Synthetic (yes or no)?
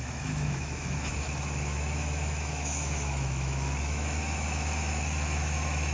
yes